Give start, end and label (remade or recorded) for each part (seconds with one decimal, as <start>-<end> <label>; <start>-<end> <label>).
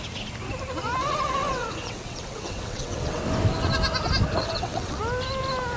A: 0.0-1.0 recorded; 1.0-3.2 remade; 3.2-4.4 recorded; 4.4-5.0 remade; 5.0-5.8 recorded